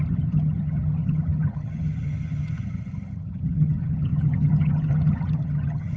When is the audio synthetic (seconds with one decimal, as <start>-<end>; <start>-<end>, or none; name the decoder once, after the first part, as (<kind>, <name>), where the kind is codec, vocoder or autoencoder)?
0.0-6.0 (vocoder, HiFi-GAN)